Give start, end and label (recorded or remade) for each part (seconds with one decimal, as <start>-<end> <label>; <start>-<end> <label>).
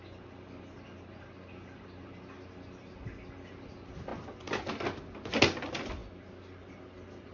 0.0-7.3 recorded